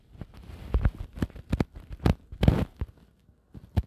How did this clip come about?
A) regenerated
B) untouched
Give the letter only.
B